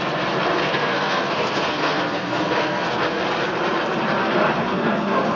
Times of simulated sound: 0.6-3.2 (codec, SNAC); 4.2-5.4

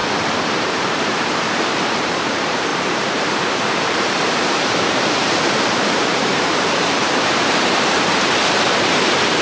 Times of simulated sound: 0.6-9.4 (vocoder, BigVGAN v2)

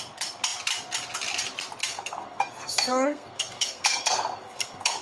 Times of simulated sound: 1.9-5.0 (codec, SNAC)

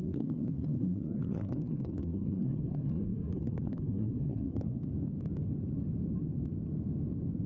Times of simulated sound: 0.0-4.8 (codec, SNAC)